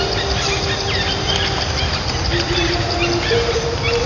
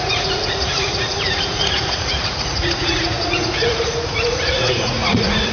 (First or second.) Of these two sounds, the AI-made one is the second